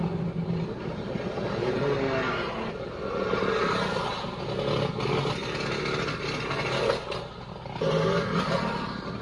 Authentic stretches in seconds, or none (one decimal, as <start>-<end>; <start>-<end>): 0.0-9.2